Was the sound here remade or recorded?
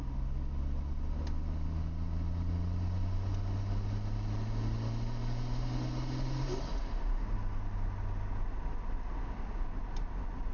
recorded